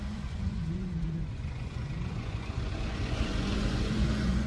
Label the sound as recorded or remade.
remade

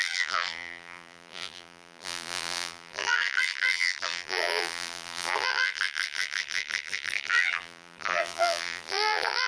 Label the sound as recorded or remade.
remade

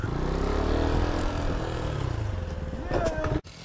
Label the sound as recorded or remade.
recorded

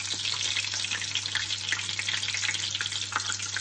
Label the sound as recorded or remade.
recorded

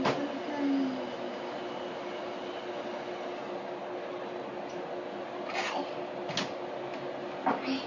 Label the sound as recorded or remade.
recorded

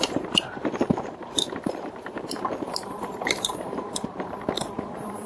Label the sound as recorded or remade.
remade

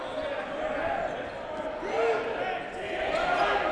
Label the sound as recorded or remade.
recorded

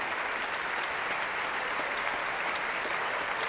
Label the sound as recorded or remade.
recorded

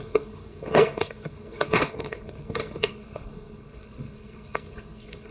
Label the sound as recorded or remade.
remade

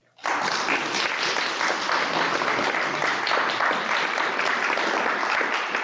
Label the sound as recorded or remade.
recorded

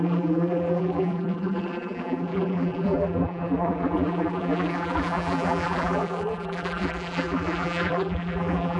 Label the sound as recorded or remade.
remade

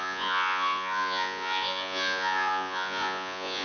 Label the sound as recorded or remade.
remade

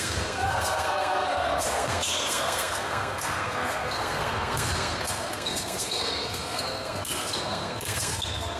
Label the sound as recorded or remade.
remade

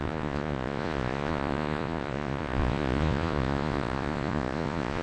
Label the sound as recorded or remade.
remade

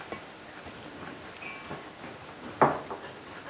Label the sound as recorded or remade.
recorded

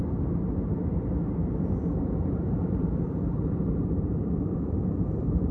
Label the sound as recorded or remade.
remade